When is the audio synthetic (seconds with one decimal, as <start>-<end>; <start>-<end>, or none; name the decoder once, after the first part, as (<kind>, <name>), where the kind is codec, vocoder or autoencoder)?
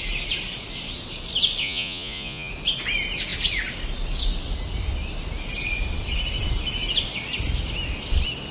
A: 1.6-2.5 (vocoder, Vocos)